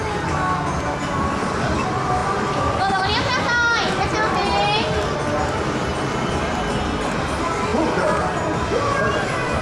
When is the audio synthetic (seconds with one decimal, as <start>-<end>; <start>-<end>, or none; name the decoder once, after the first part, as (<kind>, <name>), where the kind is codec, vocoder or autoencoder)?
none